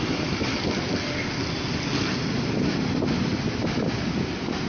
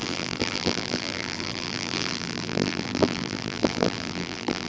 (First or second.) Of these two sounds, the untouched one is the first